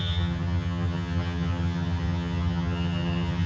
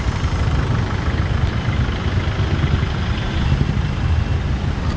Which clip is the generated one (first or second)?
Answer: first